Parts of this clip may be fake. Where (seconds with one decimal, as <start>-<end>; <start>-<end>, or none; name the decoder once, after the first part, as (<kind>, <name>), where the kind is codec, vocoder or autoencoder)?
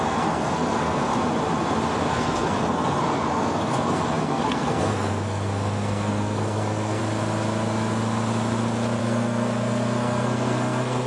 0.0-1.1 (codec, SNAC); 2.1-7.0; 9.0-11.1